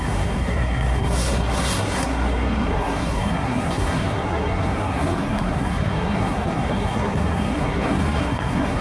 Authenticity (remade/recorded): remade